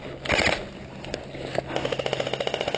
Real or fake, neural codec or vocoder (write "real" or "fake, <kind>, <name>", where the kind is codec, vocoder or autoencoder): real